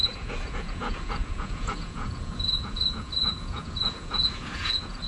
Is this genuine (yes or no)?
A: no